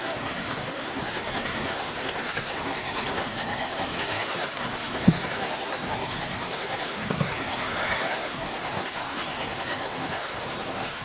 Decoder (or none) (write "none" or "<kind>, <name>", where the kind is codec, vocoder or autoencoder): codec, SNAC